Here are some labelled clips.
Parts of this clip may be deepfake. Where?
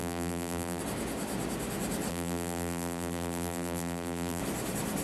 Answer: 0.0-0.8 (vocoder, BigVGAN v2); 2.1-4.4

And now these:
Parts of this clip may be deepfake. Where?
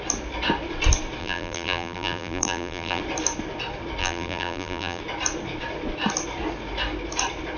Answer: 1.2-3.0 (vocoder, BigVGAN v2); 4.0-5.0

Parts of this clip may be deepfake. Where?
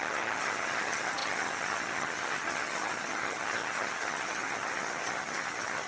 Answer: 0.0-5.9 (vocoder, HiFi-GAN)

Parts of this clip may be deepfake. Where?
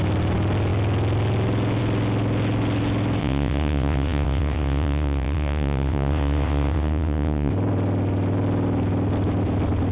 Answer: 3.2-7.5 (vocoder, WaveNeXt)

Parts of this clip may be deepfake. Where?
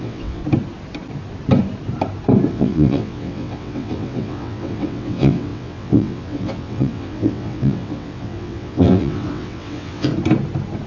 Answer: 0.0-0.4 (vocoder, WaveNeXt); 2.5-10.1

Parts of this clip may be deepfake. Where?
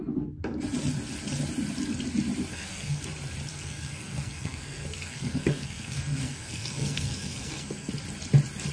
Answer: 2.5-3.0 (codec, SNAC); 3.5-7.9